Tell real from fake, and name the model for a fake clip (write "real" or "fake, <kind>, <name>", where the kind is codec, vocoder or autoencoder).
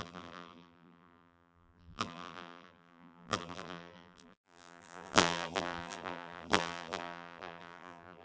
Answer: fake, vocoder, BigVGAN v2